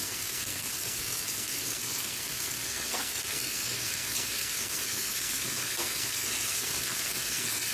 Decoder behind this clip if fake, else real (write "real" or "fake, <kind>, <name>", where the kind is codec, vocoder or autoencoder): fake, codec, SNAC